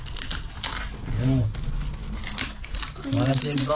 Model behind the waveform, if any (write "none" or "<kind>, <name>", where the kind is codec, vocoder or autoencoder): none